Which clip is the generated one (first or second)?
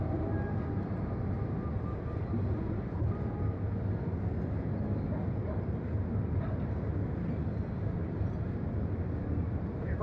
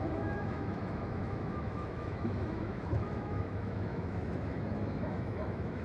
second